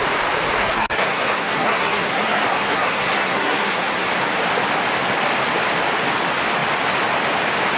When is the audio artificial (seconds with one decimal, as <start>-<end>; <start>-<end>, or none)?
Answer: 0.6-4.1